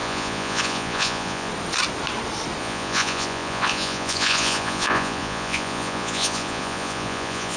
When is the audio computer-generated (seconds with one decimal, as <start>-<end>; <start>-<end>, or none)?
0.0-1.5; 2.6-7.6